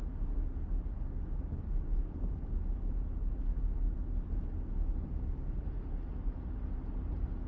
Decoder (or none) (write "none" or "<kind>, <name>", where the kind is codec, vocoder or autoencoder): none